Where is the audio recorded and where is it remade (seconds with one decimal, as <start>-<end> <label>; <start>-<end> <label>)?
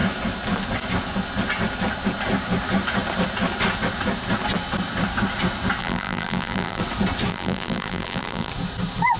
0.0-5.8 recorded; 5.8-6.8 remade; 6.8-7.3 recorded; 7.3-8.5 remade; 8.5-9.2 recorded